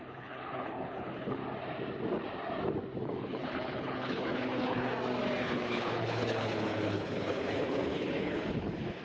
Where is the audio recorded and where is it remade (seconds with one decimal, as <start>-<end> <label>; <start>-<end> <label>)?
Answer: 0.0-1.4 remade; 1.4-3.0 recorded; 3.0-4.9 remade; 4.9-5.4 recorded; 5.4-9.0 remade